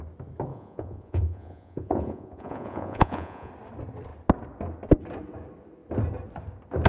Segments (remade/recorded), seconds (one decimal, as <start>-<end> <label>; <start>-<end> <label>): 0.0-0.5 recorded; 0.5-3.5 remade; 3.5-6.9 recorded